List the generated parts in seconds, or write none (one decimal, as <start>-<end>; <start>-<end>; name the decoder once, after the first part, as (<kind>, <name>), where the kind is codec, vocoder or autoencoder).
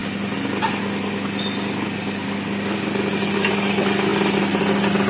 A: none